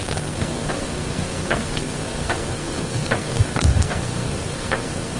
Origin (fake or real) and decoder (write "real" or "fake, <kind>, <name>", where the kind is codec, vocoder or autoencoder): fake, codec, SNAC